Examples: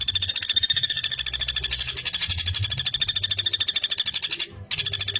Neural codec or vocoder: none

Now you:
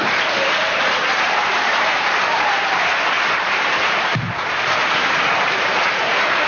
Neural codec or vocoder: vocoder, BigVGAN v2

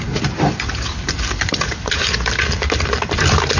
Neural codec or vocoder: vocoder, BigVGAN v2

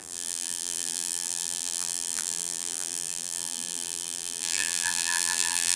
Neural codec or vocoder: vocoder, BigVGAN v2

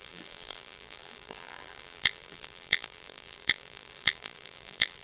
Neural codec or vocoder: vocoder, BigVGAN v2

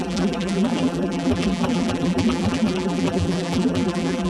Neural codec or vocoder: vocoder, BigVGAN v2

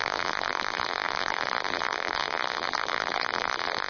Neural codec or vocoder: vocoder, BigVGAN v2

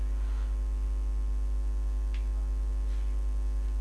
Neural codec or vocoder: none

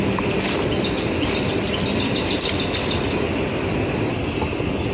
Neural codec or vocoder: none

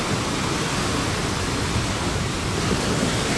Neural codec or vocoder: none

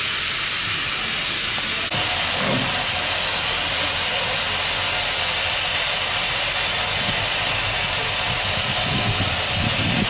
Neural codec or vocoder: none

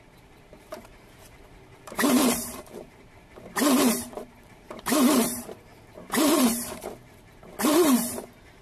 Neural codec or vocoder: vocoder, BigVGAN v2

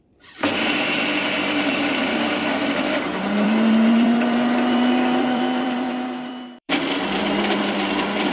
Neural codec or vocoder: vocoder, BigVGAN v2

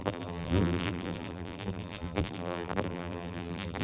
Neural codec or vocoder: vocoder, BigVGAN v2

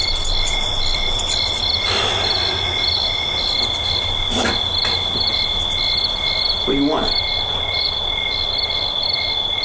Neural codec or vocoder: none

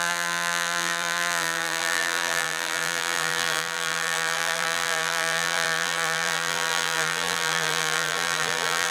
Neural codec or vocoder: vocoder, BigVGAN v2